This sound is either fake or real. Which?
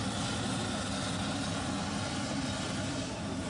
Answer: real